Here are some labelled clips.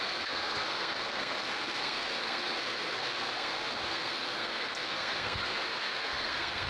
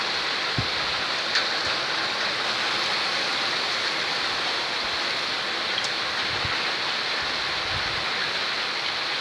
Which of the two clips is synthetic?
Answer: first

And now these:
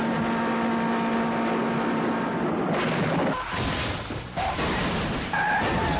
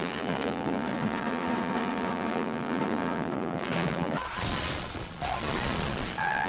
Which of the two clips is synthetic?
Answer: second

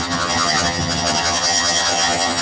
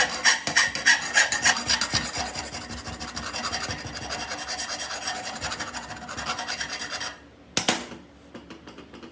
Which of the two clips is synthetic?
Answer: first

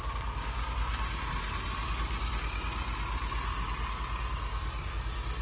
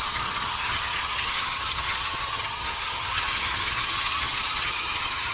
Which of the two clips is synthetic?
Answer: second